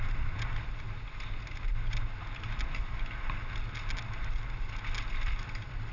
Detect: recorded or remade recorded